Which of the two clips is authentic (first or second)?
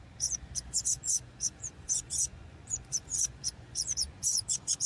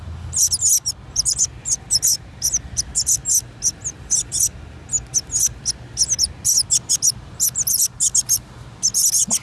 second